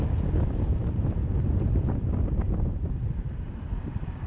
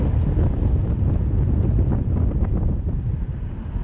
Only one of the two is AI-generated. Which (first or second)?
first